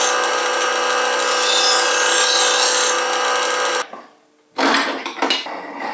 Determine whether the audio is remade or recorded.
recorded